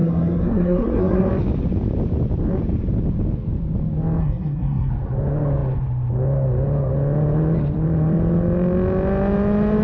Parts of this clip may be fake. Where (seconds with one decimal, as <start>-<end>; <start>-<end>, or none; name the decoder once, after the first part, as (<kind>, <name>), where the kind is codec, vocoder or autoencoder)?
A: 0.0-1.3 (codec, SNAC); 4.2-4.9